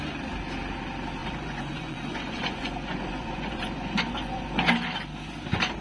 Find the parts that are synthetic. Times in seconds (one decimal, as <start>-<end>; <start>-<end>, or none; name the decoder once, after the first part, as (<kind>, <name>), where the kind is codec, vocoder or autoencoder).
1.2-4.7 (vocoder, Vocos)